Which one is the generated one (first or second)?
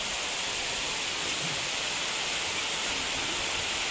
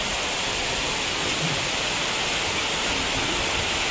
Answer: first